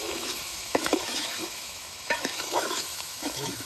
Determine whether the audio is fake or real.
fake